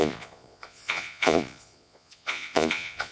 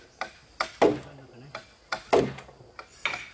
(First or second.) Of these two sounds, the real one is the second